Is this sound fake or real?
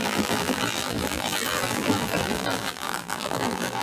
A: fake